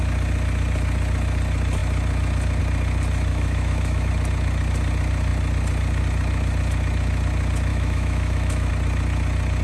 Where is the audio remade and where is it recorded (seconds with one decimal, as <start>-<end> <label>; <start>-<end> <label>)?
0.0-3.3 recorded; 3.3-4.1 remade; 4.1-7.7 recorded; 7.7-8.7 remade; 8.7-9.6 recorded